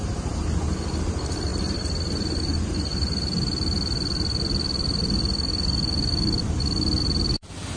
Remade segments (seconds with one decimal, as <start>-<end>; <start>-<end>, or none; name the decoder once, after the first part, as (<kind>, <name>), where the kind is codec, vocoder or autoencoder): 0.0-2.9 (vocoder, BigVGAN v2); 7.0-7.8